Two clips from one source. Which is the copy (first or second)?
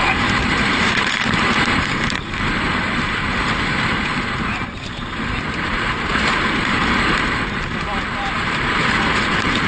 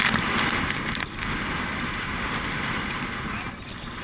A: first